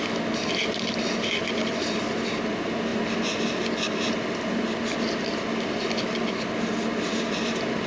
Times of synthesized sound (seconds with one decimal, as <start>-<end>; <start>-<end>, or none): none